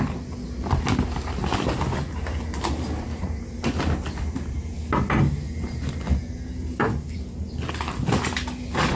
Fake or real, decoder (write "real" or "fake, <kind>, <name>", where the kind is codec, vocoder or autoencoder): real